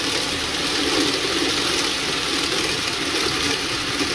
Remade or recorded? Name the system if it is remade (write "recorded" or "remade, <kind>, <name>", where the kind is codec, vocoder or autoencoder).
recorded